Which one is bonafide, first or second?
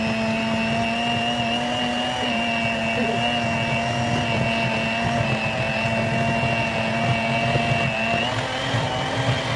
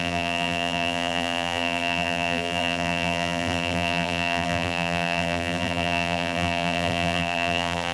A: first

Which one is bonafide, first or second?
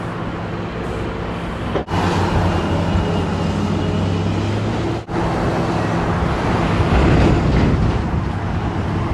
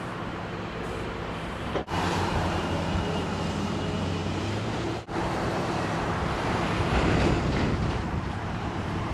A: first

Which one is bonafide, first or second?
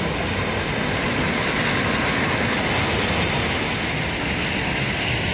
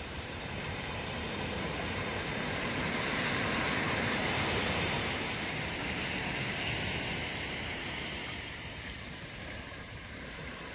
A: first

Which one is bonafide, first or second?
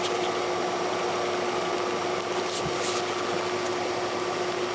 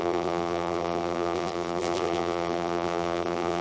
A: first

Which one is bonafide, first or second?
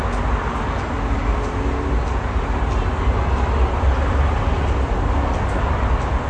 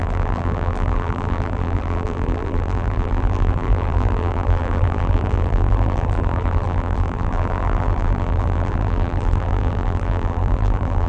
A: first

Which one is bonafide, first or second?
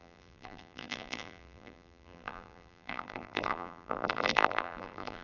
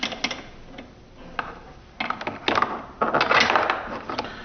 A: second